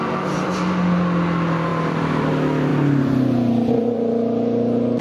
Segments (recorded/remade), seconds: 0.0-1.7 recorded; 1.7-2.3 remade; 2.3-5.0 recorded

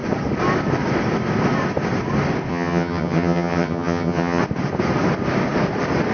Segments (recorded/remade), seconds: 0.0-2.5 recorded; 2.5-4.4 remade; 4.4-6.1 recorded

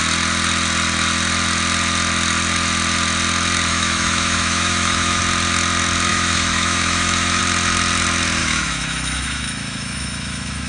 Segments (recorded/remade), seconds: 0.0-3.7 recorded; 3.7-5.2 remade; 5.2-6.1 recorded; 6.1-7.4 remade; 7.4-8.4 recorded; 8.4-10.7 remade